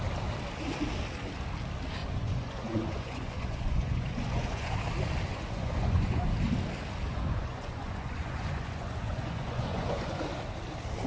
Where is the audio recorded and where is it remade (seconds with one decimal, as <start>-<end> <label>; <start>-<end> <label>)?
0.0-2.0 recorded; 2.0-4.7 remade; 4.7-5.3 recorded; 5.3-6.3 remade; 6.3-7.1 recorded; 7.1-10.2 remade; 10.2-11.1 recorded

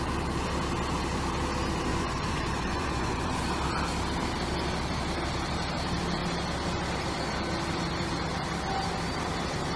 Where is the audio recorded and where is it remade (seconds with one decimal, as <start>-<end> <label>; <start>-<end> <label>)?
0.0-1.9 recorded; 1.9-3.4 remade; 3.4-9.8 recorded

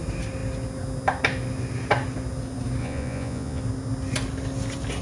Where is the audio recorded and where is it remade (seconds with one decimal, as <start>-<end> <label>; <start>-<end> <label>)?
0.0-2.8 recorded; 2.8-3.6 remade; 3.6-5.0 recorded

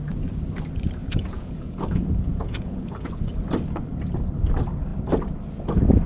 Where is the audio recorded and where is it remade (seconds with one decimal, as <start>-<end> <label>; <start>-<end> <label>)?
0.0-1.0 recorded; 1.0-3.1 remade; 3.1-6.1 recorded

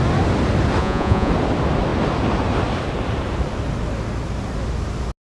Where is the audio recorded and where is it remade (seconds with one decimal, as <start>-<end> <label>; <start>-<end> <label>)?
0.0-0.8 recorded; 0.8-1.3 remade; 1.3-5.2 recorded

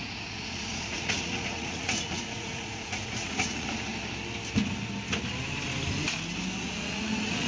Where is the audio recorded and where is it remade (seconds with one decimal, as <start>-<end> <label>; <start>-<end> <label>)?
0.0-3.9 remade; 3.9-6.6 recorded; 6.6-7.5 remade

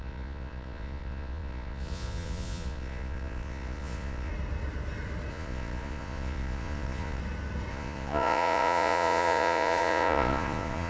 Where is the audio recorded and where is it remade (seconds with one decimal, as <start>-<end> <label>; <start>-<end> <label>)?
0.0-4.3 remade; 4.3-5.3 recorded; 5.3-7.2 remade; 7.2-7.7 recorded; 7.7-10.9 remade

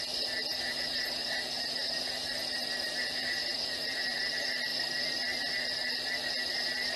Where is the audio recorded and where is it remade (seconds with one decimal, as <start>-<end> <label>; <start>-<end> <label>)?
0.0-0.4 recorded; 0.4-2.2 remade; 2.2-3.0 recorded; 3.0-4.0 remade; 4.0-7.0 recorded